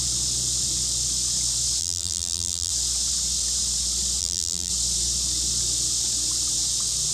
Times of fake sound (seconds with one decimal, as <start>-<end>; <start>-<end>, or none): 1.8-2.7; 4.2-4.7